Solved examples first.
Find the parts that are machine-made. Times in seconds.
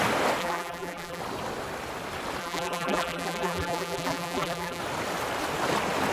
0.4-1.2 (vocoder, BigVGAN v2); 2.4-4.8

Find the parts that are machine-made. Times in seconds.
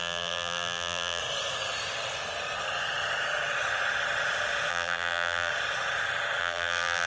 0.0-1.2 (vocoder, BigVGAN v2); 4.7-5.5; 6.4-7.1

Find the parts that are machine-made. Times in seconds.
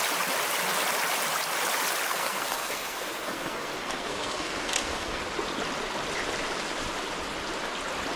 2.1-5.2 (codec, SNAC)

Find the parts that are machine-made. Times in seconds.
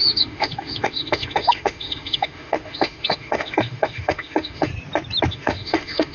0.0-4.7 (autoencoder, DAC-VAE); 5.3-6.1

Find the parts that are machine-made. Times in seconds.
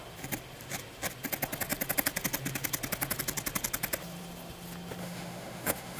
5.0-6.0 (autoencoder, DAC-VAE)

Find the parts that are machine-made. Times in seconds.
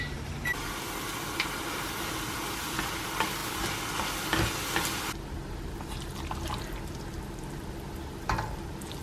none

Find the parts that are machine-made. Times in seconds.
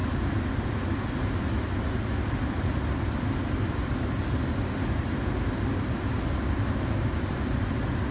none